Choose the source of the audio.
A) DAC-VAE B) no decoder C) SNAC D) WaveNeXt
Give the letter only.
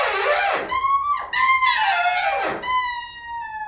B